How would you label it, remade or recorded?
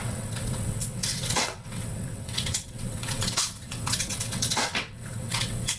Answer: remade